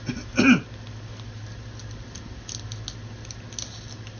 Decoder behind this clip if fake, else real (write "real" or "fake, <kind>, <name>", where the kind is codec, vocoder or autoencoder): real